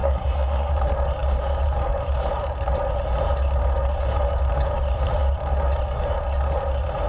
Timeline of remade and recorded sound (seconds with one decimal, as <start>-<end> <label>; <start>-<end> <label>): 0.0-0.7 remade; 0.7-7.1 recorded